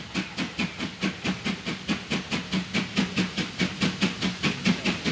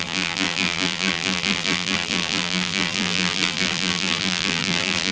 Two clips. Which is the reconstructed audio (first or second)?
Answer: second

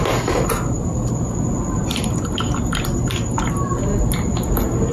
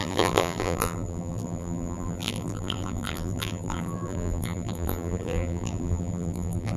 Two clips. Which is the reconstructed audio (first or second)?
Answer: second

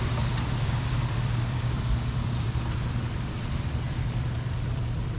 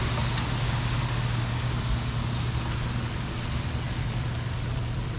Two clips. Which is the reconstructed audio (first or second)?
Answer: first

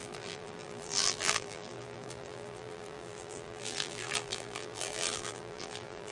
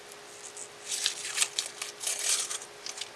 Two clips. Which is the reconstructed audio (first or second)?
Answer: first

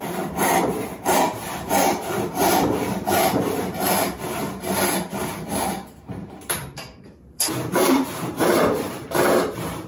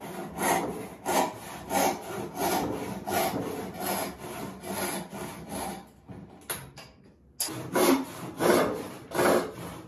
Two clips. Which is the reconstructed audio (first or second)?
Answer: first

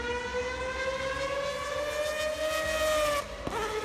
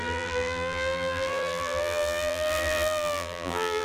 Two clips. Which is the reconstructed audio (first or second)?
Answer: second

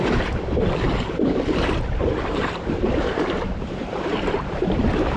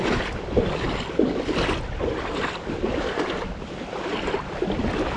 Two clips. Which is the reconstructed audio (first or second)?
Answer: first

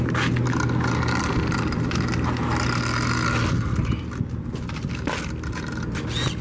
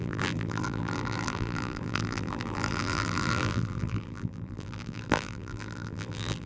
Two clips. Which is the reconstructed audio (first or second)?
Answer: second